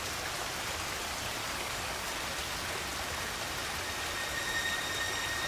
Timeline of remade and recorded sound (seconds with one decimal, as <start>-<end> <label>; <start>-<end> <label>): 0.0-1.4 recorded; 1.4-2.1 remade; 2.1-5.5 recorded